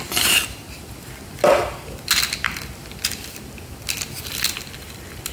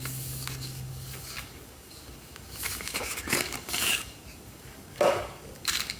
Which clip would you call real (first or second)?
first